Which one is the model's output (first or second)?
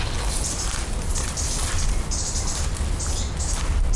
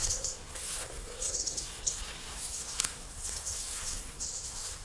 second